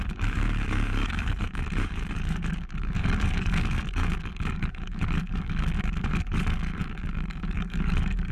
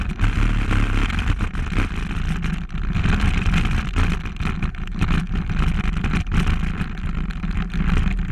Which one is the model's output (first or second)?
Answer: first